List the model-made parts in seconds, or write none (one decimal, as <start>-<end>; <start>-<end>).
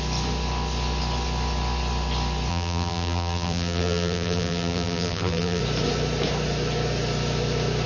2.5-5.6